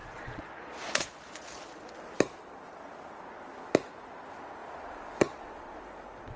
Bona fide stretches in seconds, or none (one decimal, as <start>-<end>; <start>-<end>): 1.9-4.6; 5.8-6.4